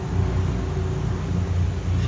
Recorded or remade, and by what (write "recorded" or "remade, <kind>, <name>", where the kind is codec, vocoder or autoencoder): recorded